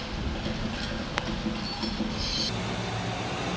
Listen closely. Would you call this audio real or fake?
real